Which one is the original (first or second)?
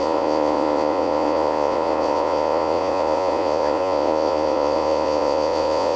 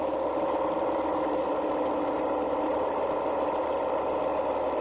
second